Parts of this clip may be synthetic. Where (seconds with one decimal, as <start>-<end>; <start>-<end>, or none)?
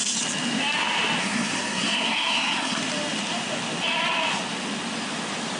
1.2-2.8